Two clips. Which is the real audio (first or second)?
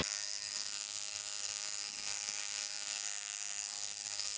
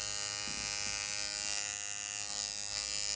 second